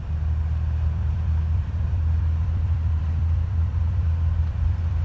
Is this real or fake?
fake